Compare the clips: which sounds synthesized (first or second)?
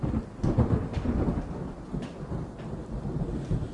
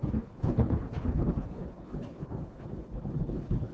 second